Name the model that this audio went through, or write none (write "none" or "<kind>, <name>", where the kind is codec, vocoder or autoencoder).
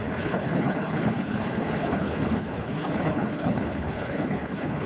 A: codec, HILCodec